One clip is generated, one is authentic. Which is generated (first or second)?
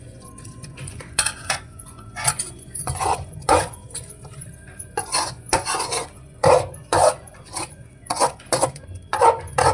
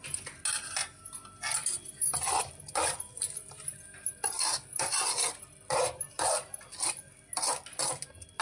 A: first